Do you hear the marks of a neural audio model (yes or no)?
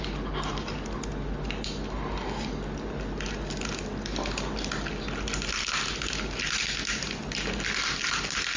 no